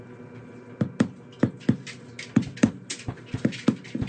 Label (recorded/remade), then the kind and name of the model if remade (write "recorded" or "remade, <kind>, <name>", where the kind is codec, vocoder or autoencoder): recorded